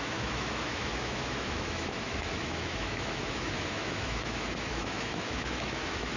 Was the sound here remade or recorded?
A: remade